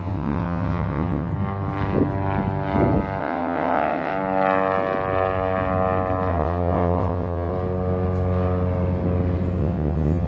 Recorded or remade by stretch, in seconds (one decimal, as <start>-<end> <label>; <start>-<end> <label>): 0.0-1.3 remade; 1.3-3.2 recorded; 3.2-4.1 remade; 4.1-6.3 recorded; 6.3-7.5 remade; 7.5-9.6 recorded; 9.6-10.3 remade